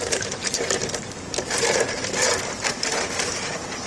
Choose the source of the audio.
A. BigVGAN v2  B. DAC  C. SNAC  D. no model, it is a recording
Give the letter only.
A